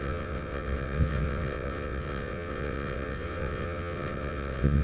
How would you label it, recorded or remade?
remade